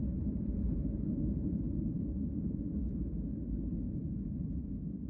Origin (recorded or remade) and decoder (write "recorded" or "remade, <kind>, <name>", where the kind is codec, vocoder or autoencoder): recorded